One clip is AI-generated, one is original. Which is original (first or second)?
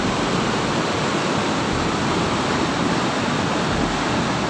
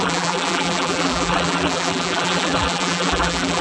first